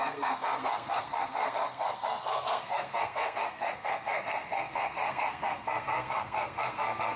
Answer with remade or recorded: remade